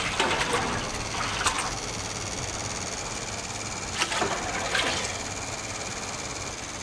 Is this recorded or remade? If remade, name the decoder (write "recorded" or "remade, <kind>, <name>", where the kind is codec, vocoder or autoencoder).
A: recorded